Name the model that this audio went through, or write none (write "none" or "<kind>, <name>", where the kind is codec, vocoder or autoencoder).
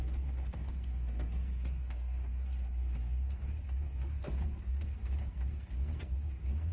codec, SNAC